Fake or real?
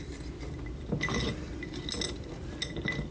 real